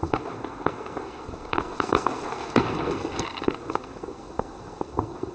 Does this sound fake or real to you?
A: fake